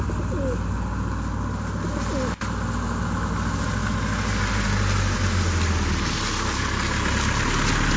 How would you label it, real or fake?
real